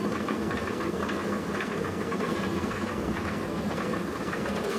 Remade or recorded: remade